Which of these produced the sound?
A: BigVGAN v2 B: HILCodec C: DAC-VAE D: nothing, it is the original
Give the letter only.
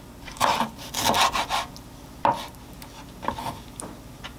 D